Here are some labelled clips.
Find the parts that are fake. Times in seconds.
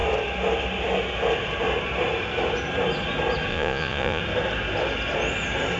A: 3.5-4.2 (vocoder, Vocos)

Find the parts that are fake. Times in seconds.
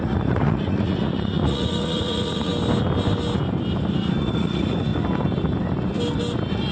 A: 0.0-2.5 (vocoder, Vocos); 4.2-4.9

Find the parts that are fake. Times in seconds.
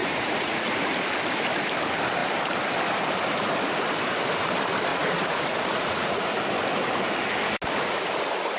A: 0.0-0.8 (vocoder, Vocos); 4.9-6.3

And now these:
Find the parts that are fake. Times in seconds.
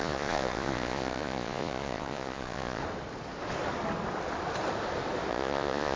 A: 0.0-2.8 (vocoder, Vocos); 5.3-6.0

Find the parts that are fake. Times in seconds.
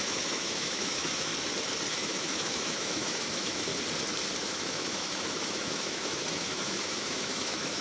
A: 0.0-1.3 (autoencoder, DAC-VAE); 1.9-3.7; 4.4-7.8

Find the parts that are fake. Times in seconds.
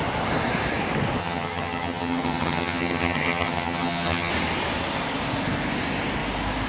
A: 1.2-4.3 (vocoder, HiFi-GAN)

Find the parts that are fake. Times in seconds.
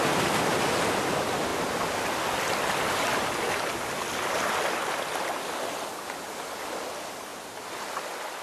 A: none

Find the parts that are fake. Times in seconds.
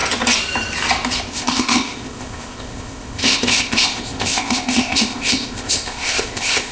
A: 1.3-6.7 (codec, ZipCodec)